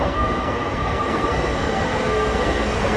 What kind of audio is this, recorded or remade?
remade